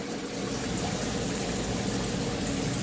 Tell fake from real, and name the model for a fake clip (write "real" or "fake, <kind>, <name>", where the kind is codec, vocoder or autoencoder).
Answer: real